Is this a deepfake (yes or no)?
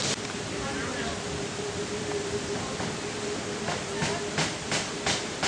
yes